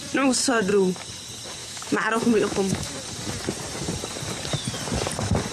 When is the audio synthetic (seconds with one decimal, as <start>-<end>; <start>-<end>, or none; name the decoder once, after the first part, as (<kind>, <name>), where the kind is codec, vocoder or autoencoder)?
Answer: 1.6-2.9 (autoencoder, DAC-VAE)

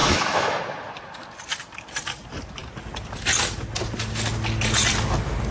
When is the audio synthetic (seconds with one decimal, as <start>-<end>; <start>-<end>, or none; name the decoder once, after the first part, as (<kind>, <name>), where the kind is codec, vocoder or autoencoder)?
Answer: 0.0-0.6 (autoencoder, DAC-VAE)

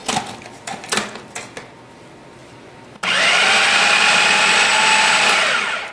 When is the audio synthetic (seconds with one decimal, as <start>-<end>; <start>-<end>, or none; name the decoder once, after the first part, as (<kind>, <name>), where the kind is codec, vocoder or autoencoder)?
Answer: 0.0-0.5 (vocoder, BigVGAN v2); 2.4-3.7; 4.7-5.9

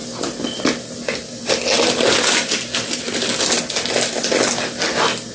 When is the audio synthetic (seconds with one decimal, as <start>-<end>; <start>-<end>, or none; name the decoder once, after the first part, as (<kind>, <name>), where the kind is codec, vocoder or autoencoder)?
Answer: none

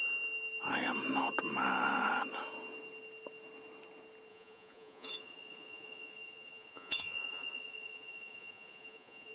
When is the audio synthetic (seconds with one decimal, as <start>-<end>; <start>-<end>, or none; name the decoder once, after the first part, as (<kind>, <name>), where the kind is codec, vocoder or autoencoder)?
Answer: 4.3-9.3 (vocoder, Vocos)

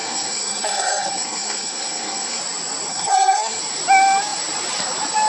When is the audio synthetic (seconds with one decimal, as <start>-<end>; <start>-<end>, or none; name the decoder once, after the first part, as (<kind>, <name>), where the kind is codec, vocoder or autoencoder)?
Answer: 0.0-2.4 (codec, SNAC); 2.9-3.6

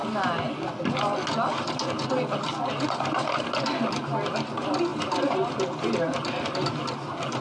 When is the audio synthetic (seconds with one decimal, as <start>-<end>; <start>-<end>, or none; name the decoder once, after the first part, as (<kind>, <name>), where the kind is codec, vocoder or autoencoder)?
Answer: none

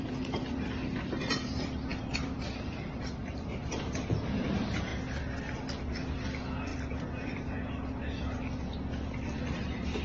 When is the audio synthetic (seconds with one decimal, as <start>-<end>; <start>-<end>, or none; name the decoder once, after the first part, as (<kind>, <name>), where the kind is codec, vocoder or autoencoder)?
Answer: 0.0-4.9 (vocoder, BigVGAN v2); 5.4-10.0